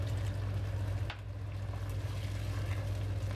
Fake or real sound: real